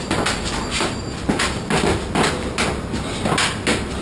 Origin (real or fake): real